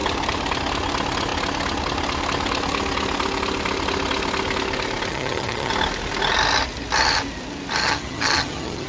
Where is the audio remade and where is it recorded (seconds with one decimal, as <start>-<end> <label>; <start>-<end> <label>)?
0.0-5.1 recorded; 5.1-5.7 remade; 5.7-7.8 recorded; 7.8-8.9 remade